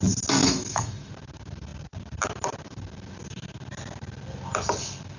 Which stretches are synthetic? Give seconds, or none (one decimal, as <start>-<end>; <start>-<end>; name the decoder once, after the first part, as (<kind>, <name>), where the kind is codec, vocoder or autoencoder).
0.4-1.1 (autoencoder, DAC-VAE)